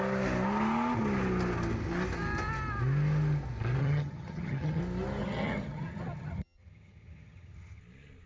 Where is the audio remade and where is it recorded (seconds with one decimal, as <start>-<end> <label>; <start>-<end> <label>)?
0.0-3.8 recorded; 3.8-4.8 remade; 4.8-5.2 recorded; 5.2-7.8 remade; 7.8-8.3 recorded